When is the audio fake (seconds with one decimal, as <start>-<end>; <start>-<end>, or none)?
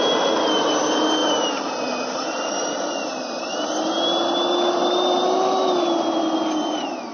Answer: none